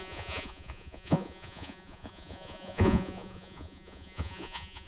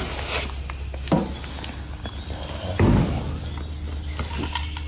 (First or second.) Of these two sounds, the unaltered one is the second